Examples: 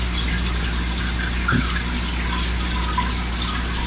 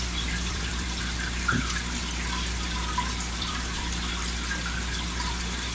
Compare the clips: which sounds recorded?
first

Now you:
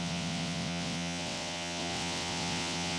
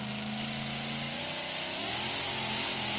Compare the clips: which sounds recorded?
second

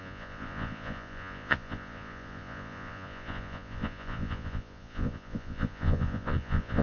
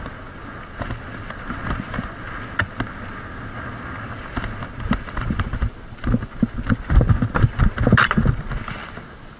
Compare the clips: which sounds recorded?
second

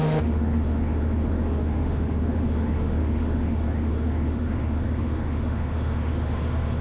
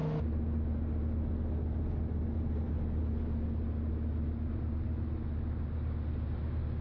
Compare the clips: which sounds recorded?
second